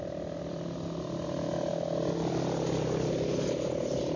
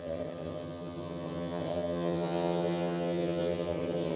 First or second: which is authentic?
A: first